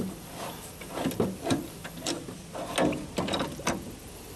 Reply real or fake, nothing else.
real